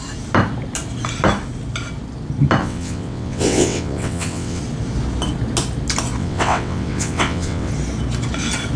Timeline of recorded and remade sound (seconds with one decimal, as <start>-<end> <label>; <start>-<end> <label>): 0.0-2.6 recorded; 2.6-4.6 remade; 4.6-6.2 recorded; 6.2-7.7 remade; 7.7-8.8 recorded